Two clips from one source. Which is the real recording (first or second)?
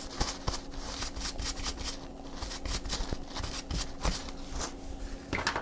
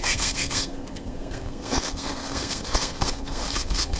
first